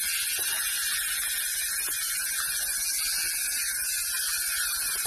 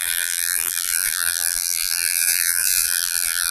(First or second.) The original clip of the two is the first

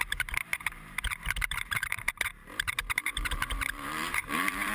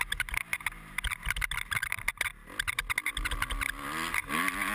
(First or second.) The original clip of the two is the second